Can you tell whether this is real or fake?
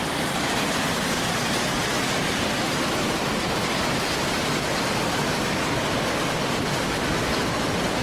fake